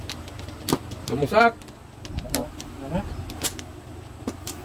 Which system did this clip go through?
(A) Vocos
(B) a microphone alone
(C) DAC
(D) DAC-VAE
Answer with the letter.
B